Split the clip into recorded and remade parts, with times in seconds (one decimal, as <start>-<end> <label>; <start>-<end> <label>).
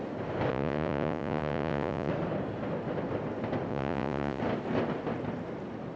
0.0-0.5 recorded; 0.5-2.1 remade; 2.1-3.7 recorded; 3.7-4.4 remade; 4.4-6.0 recorded